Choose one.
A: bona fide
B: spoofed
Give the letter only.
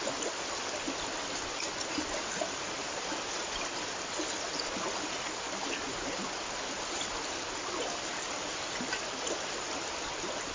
B